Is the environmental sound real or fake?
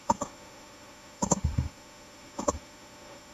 fake